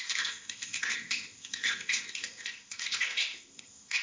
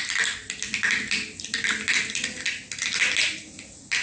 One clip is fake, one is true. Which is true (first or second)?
second